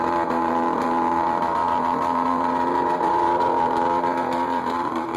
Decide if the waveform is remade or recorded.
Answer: remade